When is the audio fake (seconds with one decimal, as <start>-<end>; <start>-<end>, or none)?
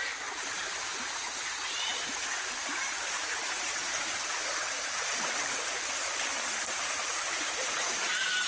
0.0-8.5